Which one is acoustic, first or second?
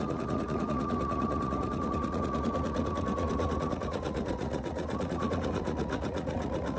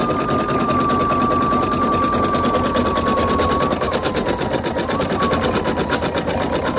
second